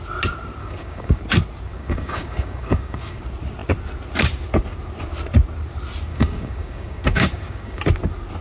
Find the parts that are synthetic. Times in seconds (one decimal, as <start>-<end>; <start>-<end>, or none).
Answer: 0.6-1.2; 1.7-3.2; 6.1-7.8